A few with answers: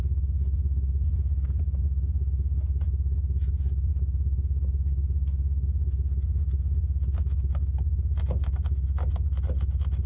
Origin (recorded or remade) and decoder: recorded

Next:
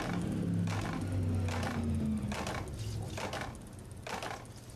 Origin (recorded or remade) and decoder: recorded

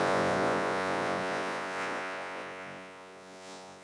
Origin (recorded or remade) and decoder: remade, vocoder, Vocos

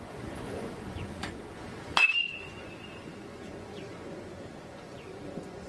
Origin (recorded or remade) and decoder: remade, vocoder, Vocos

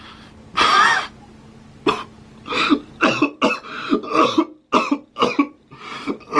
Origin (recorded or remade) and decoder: recorded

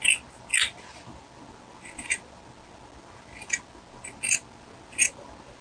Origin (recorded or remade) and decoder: recorded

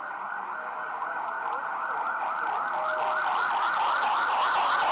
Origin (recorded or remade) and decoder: recorded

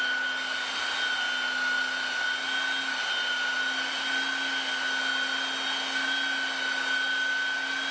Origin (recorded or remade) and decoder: recorded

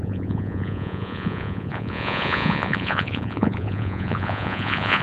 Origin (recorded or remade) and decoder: remade, vocoder, Vocos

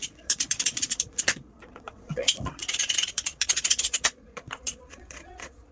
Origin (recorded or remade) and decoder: remade, vocoder, Vocos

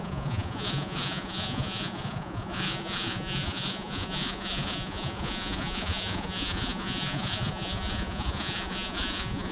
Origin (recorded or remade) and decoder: remade, vocoder, Vocos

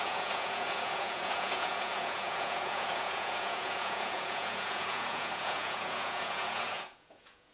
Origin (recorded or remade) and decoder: remade, vocoder, Vocos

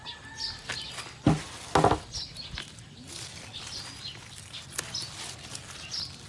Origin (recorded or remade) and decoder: recorded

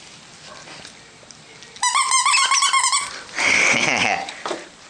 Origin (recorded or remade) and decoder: recorded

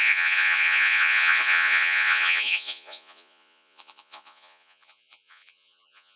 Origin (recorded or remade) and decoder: remade, vocoder, Vocos